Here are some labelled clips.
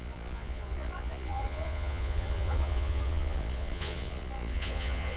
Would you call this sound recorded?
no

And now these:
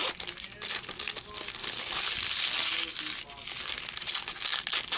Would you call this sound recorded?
yes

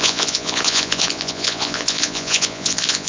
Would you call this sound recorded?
no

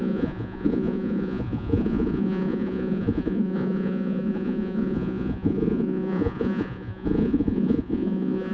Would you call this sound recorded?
no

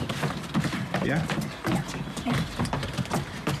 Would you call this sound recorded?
yes